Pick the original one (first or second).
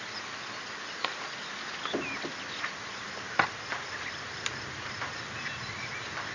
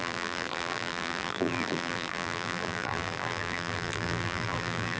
first